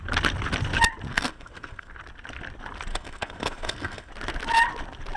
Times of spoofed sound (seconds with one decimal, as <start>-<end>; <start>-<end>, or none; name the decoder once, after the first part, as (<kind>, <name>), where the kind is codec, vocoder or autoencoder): 1.1-1.9 (codec, SNAC); 2.9-4.1